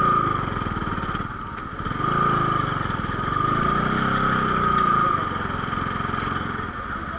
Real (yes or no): yes